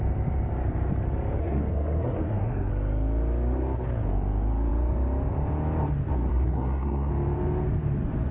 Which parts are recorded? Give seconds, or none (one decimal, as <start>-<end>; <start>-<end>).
0.0-1.4; 2.7-6.3; 7.1-8.3